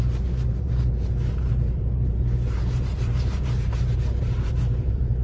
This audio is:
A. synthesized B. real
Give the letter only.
A